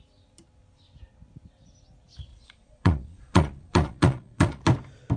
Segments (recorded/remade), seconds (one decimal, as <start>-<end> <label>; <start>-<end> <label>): 0.0-2.3 recorded; 2.3-4.6 remade; 4.6-5.2 recorded